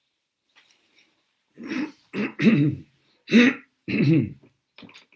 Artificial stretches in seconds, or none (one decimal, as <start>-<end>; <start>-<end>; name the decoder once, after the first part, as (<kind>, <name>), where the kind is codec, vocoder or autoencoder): 0.0-3.1 (vocoder, BigVGAN v2); 3.8-4.4